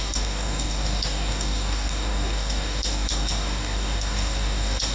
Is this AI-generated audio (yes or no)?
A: yes